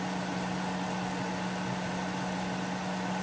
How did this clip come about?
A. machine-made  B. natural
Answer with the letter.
B